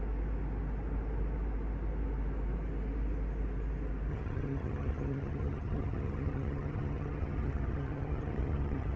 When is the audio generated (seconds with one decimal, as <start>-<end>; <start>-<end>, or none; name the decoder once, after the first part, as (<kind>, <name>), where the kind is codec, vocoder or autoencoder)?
4.1-9.0 (vocoder, HiFi-GAN)